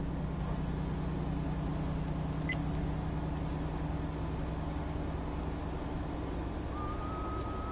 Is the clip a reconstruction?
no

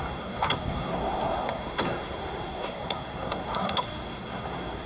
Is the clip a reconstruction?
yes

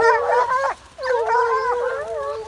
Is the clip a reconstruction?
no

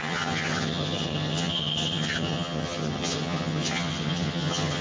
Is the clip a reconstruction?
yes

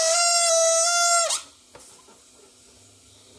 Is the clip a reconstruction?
no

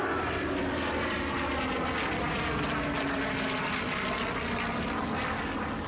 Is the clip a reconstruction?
no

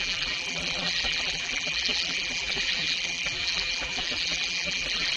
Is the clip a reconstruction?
yes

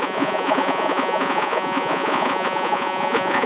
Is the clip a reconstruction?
yes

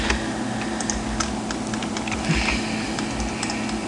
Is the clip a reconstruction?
no